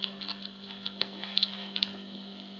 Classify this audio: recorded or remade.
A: remade